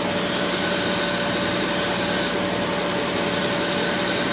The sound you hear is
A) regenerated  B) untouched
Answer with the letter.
B